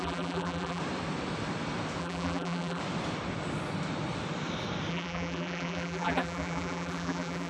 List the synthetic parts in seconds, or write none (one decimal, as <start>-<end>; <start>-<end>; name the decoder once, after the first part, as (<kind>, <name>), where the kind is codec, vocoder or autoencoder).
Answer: 0.0-0.8 (vocoder, BigVGAN v2); 2.0-2.8; 4.9-7.5